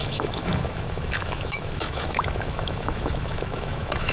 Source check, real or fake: fake